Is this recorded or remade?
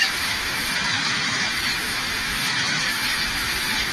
remade